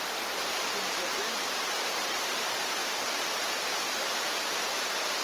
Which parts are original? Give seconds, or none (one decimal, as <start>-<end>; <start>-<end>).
2.8-3.6